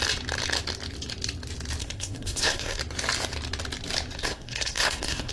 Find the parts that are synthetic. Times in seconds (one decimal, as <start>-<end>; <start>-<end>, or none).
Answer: 1.8-2.8; 4.2-5.3